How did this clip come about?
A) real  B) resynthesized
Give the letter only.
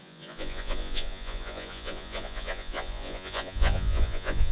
B